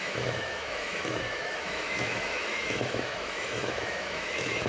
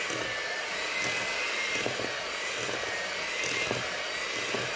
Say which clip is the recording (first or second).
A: second